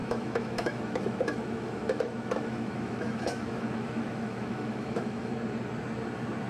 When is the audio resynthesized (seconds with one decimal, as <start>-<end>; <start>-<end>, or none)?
0.0-5.3